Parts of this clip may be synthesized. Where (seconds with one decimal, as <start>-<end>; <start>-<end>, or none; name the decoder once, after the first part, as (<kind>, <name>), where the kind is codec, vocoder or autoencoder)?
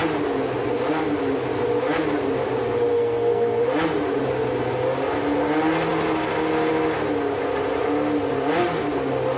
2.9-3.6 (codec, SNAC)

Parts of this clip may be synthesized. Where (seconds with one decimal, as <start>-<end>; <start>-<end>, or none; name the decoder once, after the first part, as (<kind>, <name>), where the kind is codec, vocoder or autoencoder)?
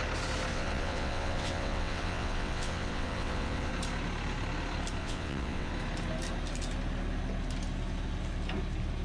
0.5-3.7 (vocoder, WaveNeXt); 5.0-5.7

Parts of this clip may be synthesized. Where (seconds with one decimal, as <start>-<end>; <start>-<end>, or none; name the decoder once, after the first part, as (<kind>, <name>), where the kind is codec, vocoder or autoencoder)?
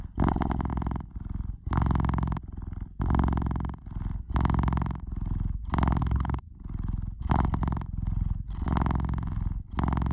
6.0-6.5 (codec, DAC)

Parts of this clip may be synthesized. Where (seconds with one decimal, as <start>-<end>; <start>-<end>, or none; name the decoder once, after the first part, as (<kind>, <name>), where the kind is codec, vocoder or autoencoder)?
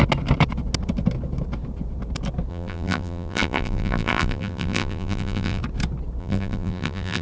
2.5-5.6 (vocoder, BigVGAN v2); 6.2-7.2